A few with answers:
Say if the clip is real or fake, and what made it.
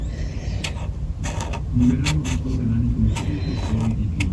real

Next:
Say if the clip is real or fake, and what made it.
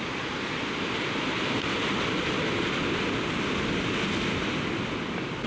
real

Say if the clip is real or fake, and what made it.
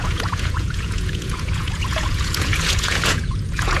fake, vocoder, Vocos